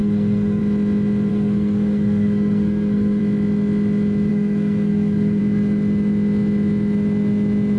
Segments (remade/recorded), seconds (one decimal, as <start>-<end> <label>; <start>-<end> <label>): 0.0-0.6 remade; 0.6-1.3 recorded; 1.3-3.2 remade; 3.2-4.3 recorded; 4.3-5.4 remade; 5.4-7.8 recorded